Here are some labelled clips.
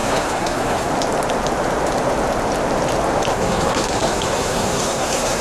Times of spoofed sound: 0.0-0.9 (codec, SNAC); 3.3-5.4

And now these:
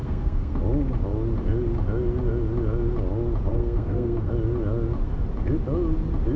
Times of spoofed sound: 0.0-0.6 (codec, SNAC); 3.5-4.3

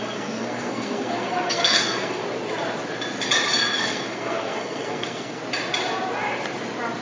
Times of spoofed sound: 0.0-2.2 (codec, SNAC); 3.8-5.4

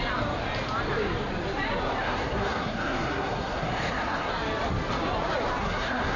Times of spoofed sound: 2.0-4.3 (codec, SNAC); 5.6-6.2

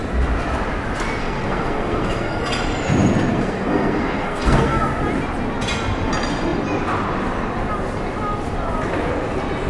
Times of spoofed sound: 1.2-2.4 (codec, SNAC); 3.3-5.0

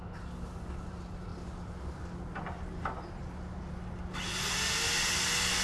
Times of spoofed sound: none

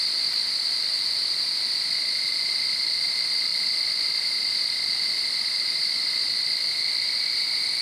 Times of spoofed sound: none